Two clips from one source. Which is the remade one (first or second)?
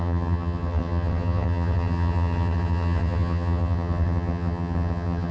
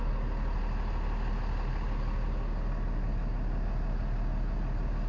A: first